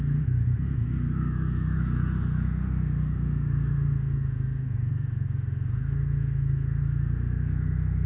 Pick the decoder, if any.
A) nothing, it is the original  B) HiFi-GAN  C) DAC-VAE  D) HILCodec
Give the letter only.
C